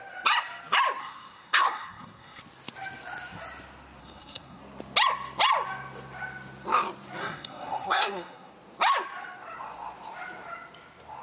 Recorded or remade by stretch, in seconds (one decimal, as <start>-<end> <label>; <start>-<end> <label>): 0.0-1.0 recorded; 1.0-2.4 remade; 2.4-4.0 recorded; 4.0-4.6 remade; 4.6-7.2 recorded; 7.2-8.5 remade; 8.5-11.2 recorded